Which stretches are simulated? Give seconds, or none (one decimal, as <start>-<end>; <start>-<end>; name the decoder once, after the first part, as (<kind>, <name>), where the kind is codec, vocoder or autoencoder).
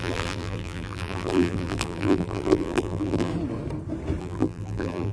0.0-3.3 (vocoder, BigVGAN v2); 4.2-5.1